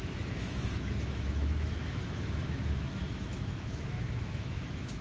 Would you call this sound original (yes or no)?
no